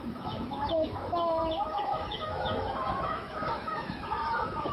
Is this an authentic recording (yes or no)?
no